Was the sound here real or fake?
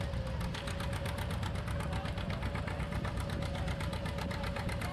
real